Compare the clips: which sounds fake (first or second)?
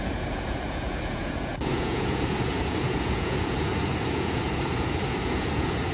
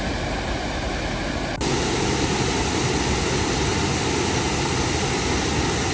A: first